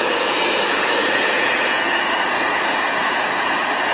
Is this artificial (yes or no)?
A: yes